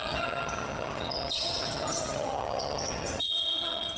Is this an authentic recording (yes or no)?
no